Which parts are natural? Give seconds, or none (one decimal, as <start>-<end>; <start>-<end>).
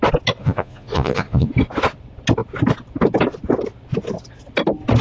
0.0-0.4; 1.5-5.0